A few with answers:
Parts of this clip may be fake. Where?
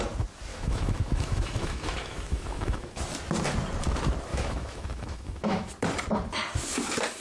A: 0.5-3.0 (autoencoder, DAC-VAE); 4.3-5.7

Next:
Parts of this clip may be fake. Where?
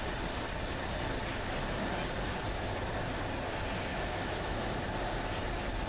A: 3.9-4.8 (autoencoder, DAC-VAE)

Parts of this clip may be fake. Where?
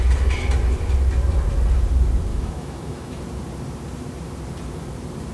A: 2.3-3.2 (autoencoder, DAC-VAE)